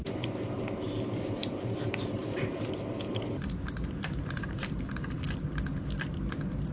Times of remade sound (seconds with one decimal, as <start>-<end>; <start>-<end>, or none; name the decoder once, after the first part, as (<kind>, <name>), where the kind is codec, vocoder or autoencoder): 0.0-0.6 (vocoder, BigVGAN v2); 1.4-5.4